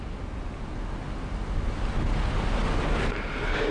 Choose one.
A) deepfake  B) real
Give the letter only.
B